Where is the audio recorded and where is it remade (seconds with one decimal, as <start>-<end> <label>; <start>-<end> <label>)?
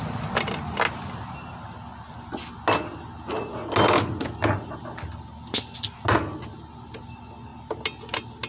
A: 0.0-8.5 recorded